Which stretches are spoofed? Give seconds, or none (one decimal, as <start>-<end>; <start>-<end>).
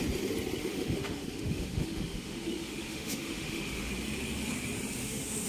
0.6-3.9; 5.0-5.5